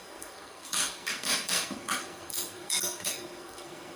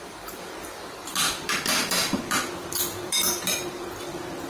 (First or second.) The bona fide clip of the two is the second